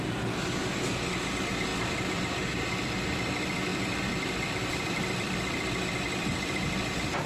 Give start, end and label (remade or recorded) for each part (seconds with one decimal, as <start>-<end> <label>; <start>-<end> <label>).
0.0-1.7 recorded; 1.7-2.2 remade; 2.2-3.7 recorded; 3.7-5.7 remade; 5.7-7.3 recorded